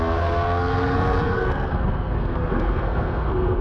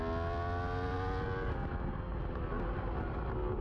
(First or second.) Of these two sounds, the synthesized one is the first